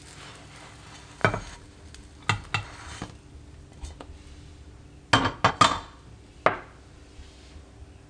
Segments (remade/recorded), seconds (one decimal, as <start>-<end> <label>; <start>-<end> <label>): 0.0-8.1 recorded